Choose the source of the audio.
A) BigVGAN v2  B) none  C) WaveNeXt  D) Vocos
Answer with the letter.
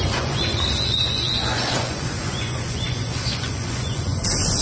D